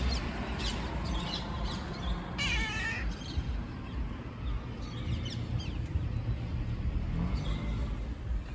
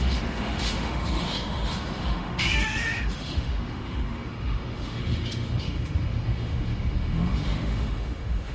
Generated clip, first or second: second